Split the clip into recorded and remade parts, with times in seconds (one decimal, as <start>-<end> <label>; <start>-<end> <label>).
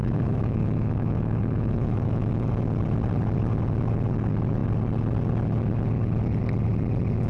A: 0.0-2.5 remade; 2.5-7.3 recorded